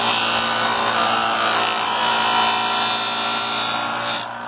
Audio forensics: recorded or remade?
recorded